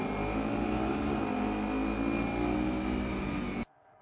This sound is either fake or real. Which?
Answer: real